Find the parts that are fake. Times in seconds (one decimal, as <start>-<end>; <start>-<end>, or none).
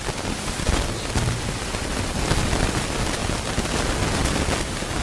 none